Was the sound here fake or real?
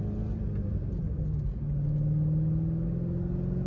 real